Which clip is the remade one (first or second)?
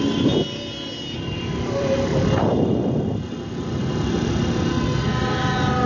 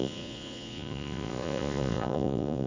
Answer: second